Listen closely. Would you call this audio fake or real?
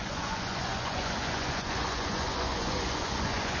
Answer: fake